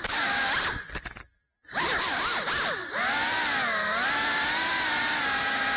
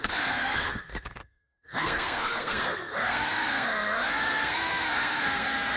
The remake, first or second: second